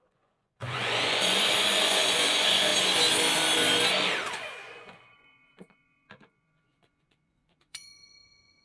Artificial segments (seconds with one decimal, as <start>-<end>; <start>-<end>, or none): 0.0-2.7; 4.3-8.6